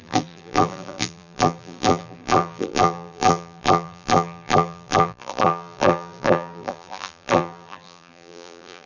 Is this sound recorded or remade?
remade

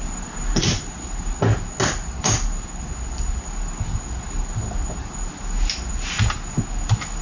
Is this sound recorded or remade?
recorded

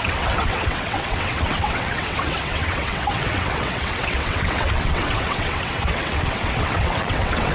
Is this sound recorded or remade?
remade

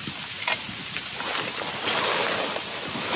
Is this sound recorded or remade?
recorded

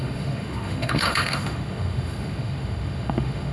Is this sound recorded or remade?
remade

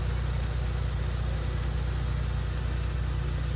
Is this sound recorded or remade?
recorded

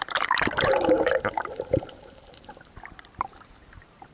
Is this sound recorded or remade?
remade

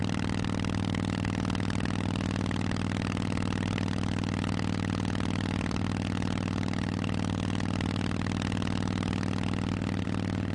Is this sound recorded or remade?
recorded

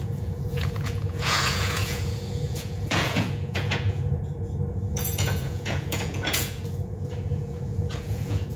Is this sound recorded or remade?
remade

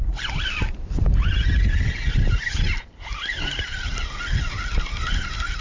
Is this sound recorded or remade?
recorded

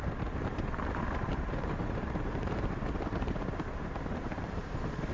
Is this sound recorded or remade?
remade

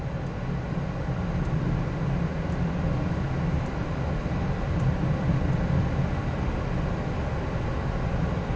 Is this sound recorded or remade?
recorded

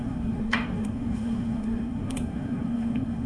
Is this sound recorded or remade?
remade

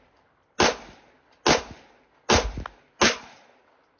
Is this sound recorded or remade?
recorded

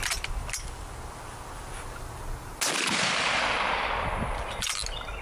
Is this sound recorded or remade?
recorded